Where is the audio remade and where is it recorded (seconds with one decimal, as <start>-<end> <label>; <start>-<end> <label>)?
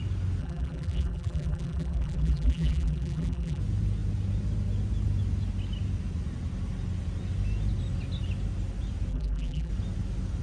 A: 0.0-0.4 recorded; 0.4-3.6 remade; 3.6-9.1 recorded; 9.1-9.7 remade; 9.7-10.4 recorded